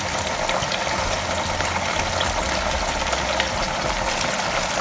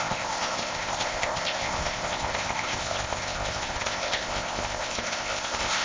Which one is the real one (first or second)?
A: first